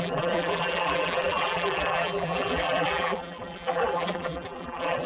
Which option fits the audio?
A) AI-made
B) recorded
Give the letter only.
A